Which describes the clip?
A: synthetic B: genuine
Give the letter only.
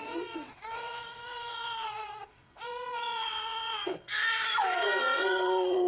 A